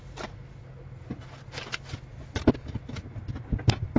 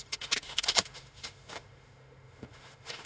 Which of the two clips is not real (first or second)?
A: second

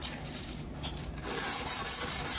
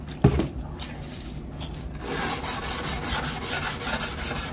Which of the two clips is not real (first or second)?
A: first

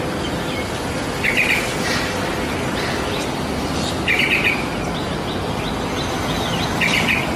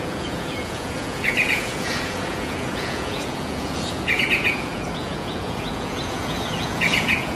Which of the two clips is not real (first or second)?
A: second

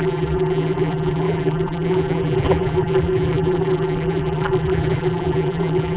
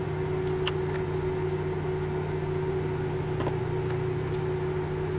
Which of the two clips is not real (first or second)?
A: first